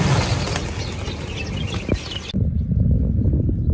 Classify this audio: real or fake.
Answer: real